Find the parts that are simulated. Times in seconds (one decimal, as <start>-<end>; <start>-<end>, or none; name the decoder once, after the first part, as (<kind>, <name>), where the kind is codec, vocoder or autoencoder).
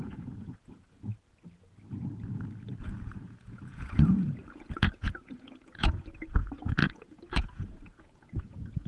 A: 0.0-1.1 (vocoder, Vocos); 2.8-8.9